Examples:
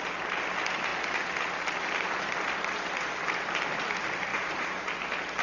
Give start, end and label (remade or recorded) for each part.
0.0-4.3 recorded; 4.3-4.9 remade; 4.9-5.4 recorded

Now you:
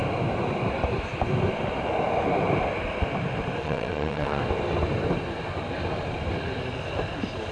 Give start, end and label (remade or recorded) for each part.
0.0-3.6 recorded; 3.6-4.4 remade; 4.4-7.5 recorded

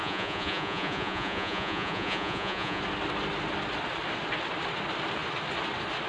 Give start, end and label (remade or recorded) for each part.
0.0-2.8 remade; 2.8-6.1 recorded